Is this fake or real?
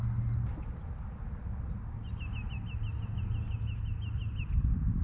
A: real